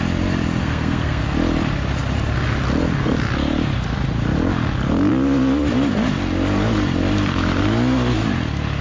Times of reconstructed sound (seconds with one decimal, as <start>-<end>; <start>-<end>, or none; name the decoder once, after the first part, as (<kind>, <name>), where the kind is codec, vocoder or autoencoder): 0.6-1.2 (codec, SNAC)